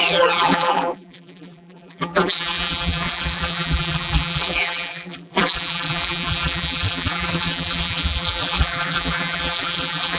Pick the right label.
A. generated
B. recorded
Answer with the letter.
A